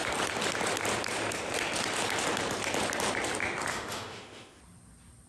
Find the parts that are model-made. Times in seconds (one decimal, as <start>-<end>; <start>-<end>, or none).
3.7-4.6